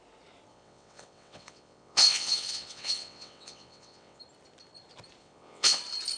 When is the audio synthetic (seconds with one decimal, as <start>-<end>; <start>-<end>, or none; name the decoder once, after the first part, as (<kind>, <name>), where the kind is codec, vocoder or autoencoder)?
0.5-4.2 (vocoder, WaveNeXt); 5.2-5.8